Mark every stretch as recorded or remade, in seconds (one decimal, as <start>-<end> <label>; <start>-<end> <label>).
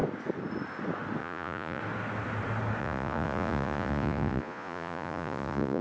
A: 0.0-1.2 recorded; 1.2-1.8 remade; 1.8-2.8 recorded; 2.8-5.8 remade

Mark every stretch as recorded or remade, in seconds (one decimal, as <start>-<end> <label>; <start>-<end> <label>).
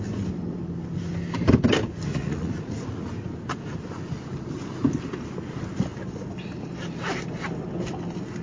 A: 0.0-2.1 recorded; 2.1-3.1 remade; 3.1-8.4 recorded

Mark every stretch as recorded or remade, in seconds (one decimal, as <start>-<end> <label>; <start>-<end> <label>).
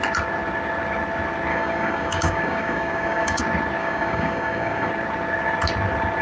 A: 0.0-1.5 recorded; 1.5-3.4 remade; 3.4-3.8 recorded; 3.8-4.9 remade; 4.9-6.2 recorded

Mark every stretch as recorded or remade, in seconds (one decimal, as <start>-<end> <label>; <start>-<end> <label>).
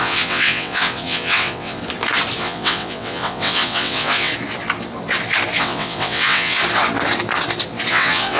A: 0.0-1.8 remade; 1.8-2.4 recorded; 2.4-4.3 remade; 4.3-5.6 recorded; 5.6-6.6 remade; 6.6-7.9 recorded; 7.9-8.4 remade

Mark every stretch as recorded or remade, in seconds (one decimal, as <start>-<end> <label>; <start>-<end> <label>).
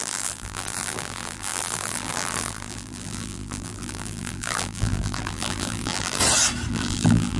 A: 0.0-6.2 remade; 6.2-6.7 recorded; 6.7-7.4 remade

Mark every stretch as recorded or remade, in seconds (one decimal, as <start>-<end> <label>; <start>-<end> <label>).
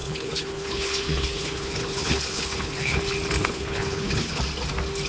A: 0.0-3.0 remade; 3.0-3.4 recorded; 3.4-4.4 remade; 4.4-5.1 recorded